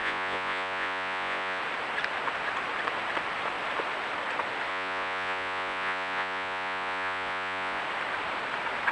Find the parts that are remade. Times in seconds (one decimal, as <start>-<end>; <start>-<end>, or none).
0.0-1.6; 4.7-7.8